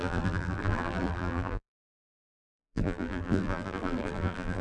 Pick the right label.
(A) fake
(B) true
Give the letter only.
A